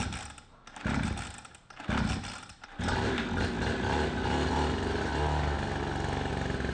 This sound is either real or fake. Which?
real